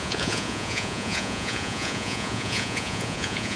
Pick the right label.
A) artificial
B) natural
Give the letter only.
A